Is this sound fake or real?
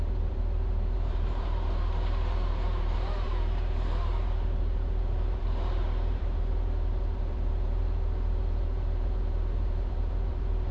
fake